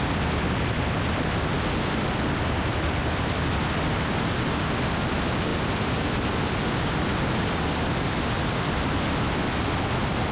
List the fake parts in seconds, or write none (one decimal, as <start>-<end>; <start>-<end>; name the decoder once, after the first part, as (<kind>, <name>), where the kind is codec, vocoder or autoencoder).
none